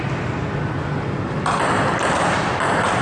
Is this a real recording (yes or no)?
no